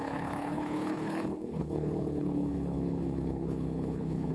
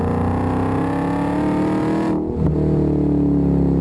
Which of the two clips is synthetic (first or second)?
first